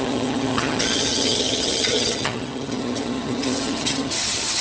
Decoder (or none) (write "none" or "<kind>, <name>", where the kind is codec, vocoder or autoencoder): vocoder, HiFi-GAN